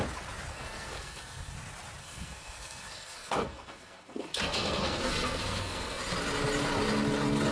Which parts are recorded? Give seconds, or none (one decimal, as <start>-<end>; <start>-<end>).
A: 0.0-0.5; 1.5-2.0; 6.0-7.5